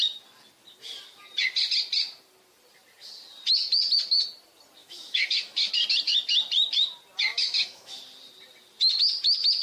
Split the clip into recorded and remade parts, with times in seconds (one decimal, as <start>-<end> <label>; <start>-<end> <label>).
0.0-4.8 recorded; 4.8-5.7 remade; 5.7-7.3 recorded; 7.3-8.0 remade; 8.0-9.6 recorded